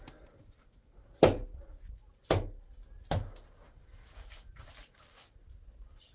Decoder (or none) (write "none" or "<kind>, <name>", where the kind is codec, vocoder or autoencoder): none